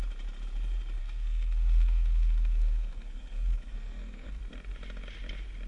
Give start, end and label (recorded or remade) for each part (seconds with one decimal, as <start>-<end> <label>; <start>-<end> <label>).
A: 0.0-1.0 recorded; 1.0-4.4 remade; 4.4-5.7 recorded